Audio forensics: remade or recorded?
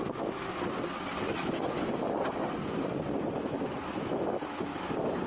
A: recorded